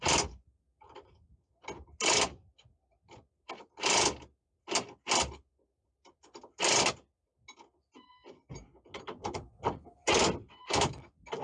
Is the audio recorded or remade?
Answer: recorded